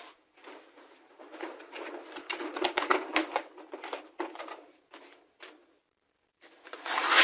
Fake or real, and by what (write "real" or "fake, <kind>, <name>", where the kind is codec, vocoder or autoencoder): fake, vocoder, BigVGAN v2